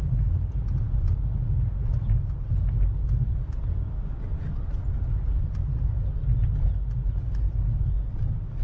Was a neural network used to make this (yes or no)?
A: no